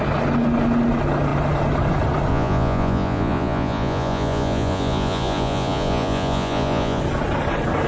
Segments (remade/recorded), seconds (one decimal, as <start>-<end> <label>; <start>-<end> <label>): 0.0-2.3 recorded; 2.3-7.0 remade; 7.0-7.9 recorded